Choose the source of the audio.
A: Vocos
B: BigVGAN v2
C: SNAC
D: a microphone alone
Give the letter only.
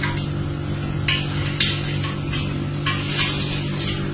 D